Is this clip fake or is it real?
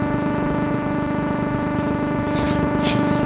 real